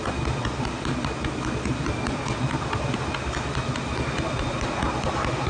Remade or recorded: recorded